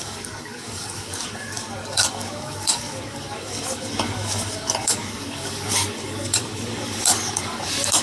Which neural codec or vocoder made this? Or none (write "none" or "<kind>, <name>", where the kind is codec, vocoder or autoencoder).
codec, DAC